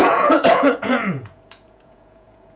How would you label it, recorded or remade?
remade